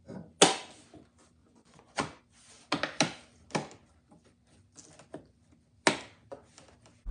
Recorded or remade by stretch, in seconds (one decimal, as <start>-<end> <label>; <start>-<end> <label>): 0.0-1.4 recorded; 1.4-2.2 remade; 2.2-7.1 recorded